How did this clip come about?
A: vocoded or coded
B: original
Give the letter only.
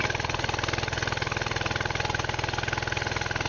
B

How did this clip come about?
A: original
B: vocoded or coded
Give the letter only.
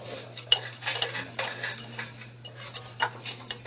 A